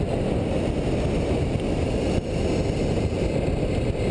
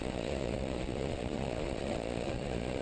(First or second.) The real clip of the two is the first